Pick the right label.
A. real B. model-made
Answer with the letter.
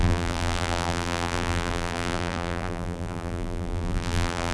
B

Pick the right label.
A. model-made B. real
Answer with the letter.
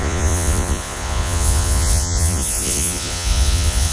A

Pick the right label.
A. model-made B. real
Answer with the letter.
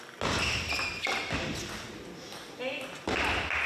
B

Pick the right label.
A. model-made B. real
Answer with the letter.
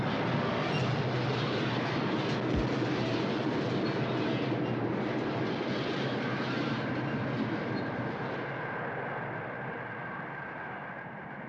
B